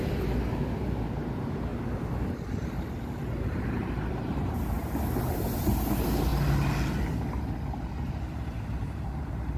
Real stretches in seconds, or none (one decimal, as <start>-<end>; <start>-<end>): 1.7-4.1; 4.8-5.6; 6.3-7.9